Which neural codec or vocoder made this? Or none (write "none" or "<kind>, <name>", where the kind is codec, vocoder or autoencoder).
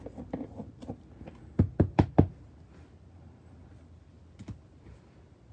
none